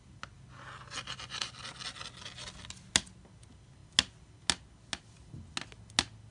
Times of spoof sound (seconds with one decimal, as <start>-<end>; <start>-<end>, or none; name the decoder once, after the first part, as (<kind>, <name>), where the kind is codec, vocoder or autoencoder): none